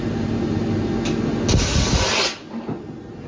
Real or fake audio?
real